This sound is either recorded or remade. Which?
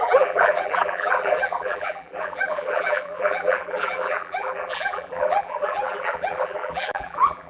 remade